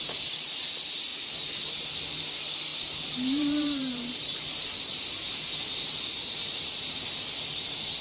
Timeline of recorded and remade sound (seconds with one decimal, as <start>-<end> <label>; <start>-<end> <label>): 0.0-2.7 recorded; 2.7-5.0 remade; 5.0-8.0 recorded